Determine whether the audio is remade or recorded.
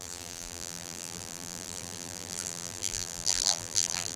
remade